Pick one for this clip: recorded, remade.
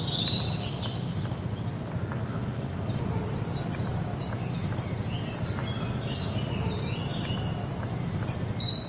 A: recorded